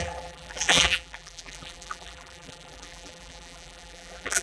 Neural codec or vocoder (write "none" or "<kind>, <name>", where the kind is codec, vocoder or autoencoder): vocoder, BigVGAN v2